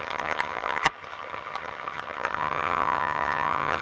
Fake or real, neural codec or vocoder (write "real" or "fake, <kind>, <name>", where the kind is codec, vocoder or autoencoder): fake, vocoder, HiFi-GAN